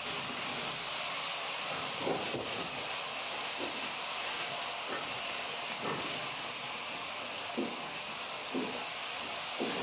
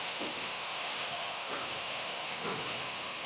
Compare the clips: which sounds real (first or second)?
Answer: first